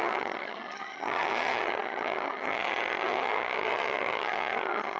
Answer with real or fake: fake